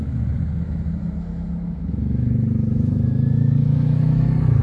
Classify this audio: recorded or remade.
remade